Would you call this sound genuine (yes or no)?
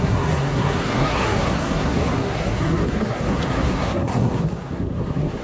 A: no